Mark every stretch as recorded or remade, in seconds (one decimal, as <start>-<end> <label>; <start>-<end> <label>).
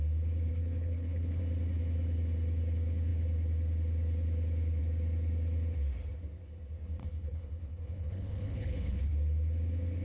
0.0-0.5 recorded; 0.5-1.4 remade; 1.4-7.0 recorded; 7.0-9.1 remade; 9.1-10.0 recorded